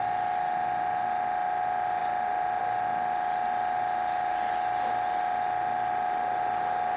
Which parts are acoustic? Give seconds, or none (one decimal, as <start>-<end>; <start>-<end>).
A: 0.0-7.0